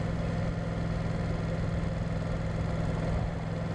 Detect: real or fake real